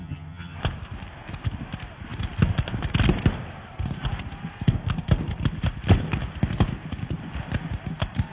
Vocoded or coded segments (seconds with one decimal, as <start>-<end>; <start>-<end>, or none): 0.0-0.6